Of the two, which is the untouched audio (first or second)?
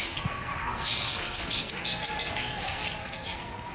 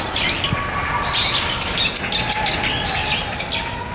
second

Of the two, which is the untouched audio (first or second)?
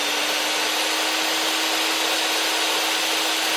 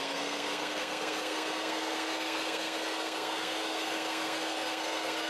first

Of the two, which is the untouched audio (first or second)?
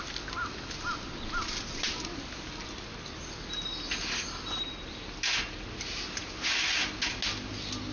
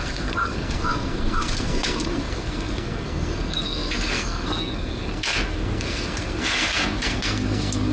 first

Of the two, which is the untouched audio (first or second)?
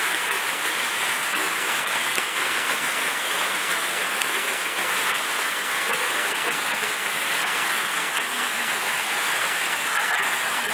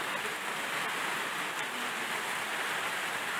second